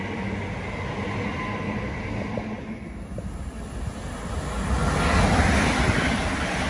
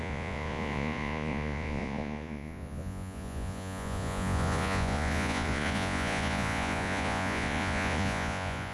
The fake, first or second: second